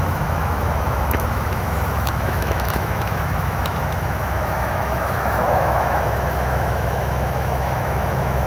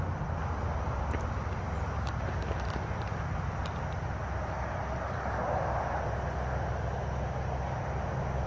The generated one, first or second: first